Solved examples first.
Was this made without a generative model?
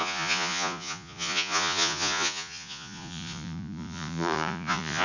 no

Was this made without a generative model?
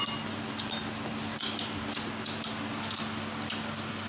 yes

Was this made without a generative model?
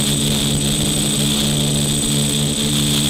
yes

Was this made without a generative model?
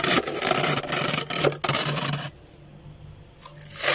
yes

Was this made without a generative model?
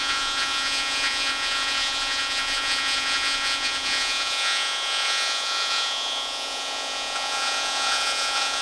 no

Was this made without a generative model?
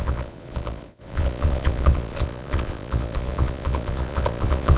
no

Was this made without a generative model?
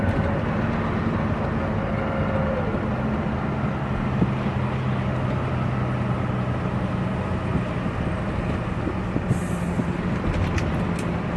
yes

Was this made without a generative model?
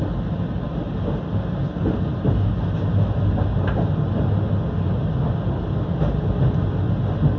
yes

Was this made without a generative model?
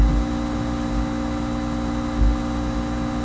yes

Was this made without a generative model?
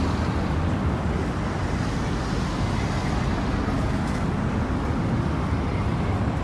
yes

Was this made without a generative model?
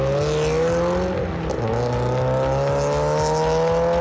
yes